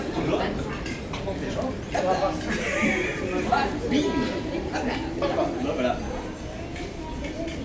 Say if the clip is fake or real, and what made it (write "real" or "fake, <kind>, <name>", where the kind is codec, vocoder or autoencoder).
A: real